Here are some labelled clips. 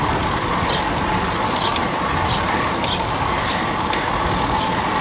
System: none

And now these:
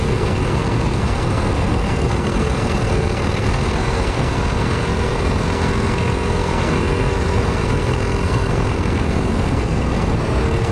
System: codec, SNAC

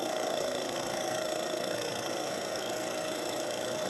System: codec, SNAC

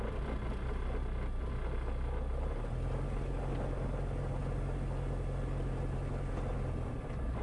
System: none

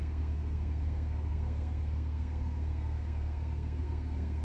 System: codec, SNAC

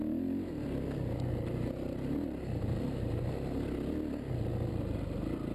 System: none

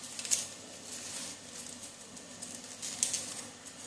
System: none